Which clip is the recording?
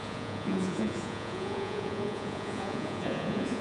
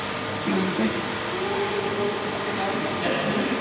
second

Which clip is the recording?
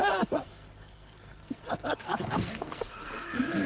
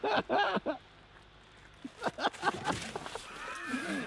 second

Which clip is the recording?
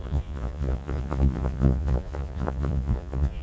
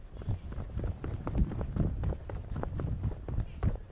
second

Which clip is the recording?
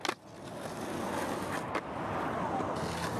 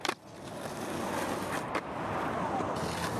first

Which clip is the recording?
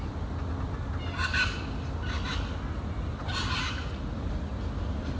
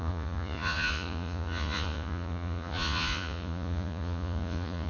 first